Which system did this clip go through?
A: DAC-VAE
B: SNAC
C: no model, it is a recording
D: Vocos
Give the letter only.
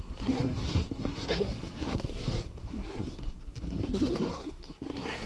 B